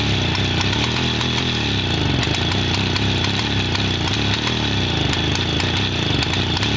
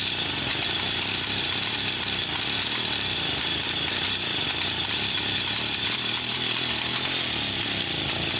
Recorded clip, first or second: first